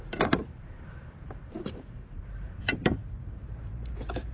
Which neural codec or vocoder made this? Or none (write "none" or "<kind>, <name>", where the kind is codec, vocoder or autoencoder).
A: vocoder, BigVGAN v2